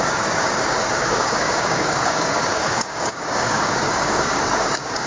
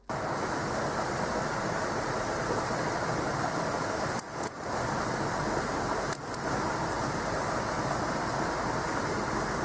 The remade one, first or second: first